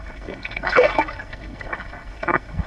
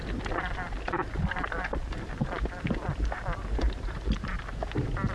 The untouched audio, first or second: second